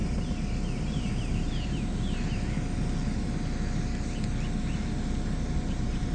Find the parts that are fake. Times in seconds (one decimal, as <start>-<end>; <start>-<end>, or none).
0.8-1.9; 5.6-6.1